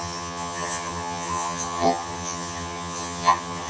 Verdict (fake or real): fake